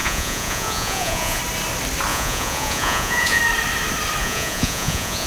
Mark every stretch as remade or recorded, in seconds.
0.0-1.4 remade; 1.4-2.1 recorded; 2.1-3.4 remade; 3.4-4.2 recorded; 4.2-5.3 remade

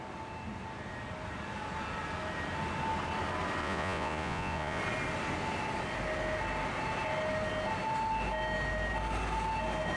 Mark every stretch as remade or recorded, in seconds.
0.0-3.6 recorded; 3.6-4.8 remade; 4.8-10.0 recorded

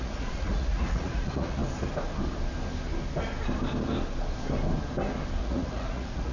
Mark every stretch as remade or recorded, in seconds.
0.0-1.6 remade; 1.6-5.4 recorded; 5.4-6.3 remade

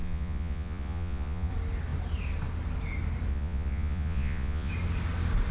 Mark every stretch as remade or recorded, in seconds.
0.0-1.5 remade; 1.5-3.3 recorded; 3.3-4.7 remade; 4.7-5.5 recorded

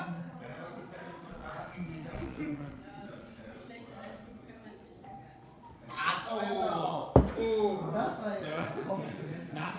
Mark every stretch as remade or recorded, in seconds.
0.0-7.0 remade; 7.0-8.4 recorded; 8.4-9.8 remade

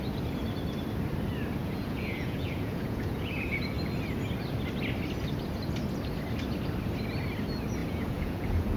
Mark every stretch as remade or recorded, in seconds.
0.0-1.6 recorded; 1.6-3.7 remade; 3.7-7.8 recorded; 7.8-8.8 remade

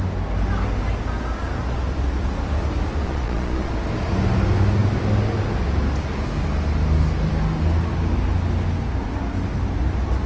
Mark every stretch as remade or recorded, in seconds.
0.0-3.0 recorded; 3.0-3.7 remade; 3.7-10.3 recorded